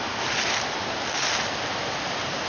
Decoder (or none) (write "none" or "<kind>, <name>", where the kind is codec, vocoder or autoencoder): none